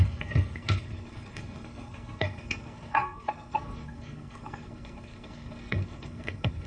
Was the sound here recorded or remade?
remade